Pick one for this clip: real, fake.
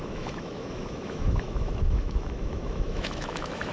fake